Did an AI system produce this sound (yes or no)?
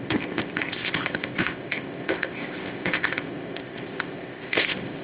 yes